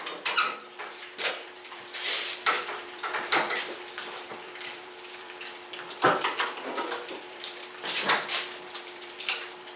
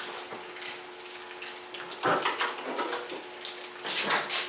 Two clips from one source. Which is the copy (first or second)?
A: first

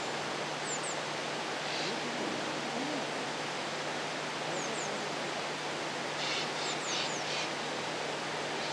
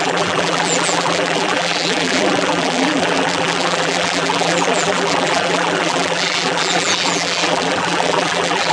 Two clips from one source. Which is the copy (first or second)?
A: second